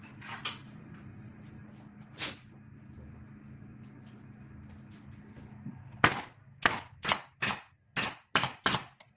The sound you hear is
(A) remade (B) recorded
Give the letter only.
B